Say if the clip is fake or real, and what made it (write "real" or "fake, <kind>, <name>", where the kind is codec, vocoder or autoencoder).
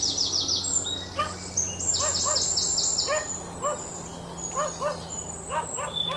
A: real